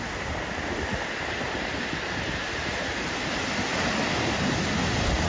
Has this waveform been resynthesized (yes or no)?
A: no